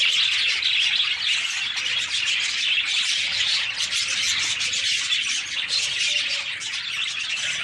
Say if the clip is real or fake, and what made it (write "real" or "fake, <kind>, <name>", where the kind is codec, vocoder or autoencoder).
real